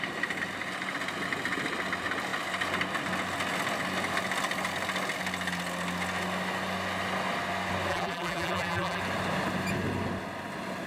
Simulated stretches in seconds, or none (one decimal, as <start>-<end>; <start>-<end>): 7.9-9.0